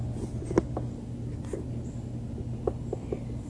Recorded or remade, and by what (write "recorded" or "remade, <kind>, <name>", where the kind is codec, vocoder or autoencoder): recorded